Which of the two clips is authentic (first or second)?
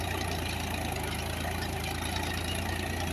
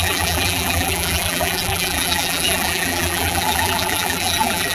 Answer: first